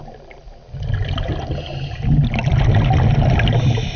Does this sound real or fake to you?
real